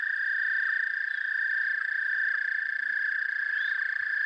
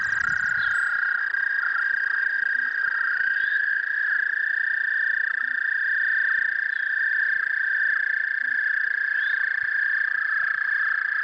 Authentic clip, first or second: second